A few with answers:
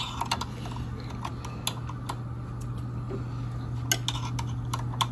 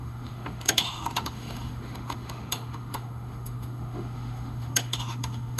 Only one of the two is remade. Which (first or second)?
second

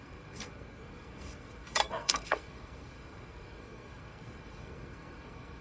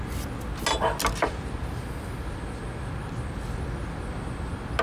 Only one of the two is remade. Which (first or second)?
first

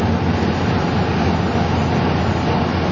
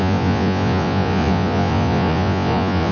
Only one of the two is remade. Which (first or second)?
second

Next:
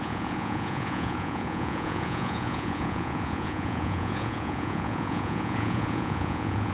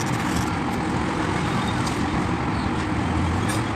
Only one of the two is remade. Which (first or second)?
first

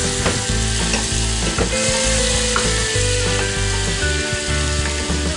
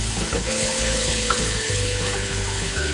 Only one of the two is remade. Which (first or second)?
second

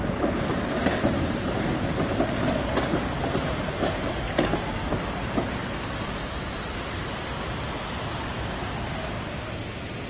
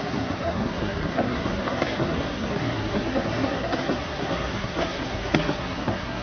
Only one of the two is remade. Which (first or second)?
second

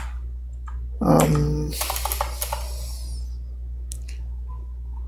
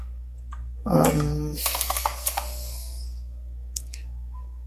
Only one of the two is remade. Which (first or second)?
second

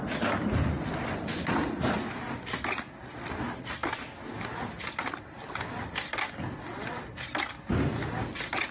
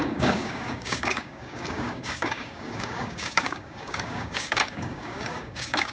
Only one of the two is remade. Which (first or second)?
second